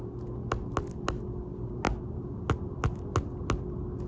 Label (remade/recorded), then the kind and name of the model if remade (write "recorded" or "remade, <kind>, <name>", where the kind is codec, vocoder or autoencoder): recorded